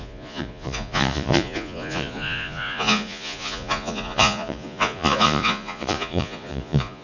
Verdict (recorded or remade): remade